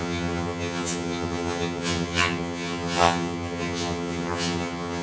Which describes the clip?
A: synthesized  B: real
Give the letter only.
A